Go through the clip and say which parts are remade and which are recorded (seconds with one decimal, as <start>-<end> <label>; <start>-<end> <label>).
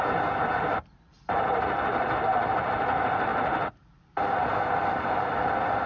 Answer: 0.0-5.9 recorded